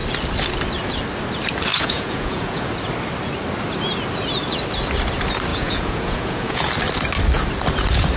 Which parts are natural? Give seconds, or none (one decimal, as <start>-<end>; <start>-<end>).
0.0-1.7; 2.7-5.5; 6.7-8.2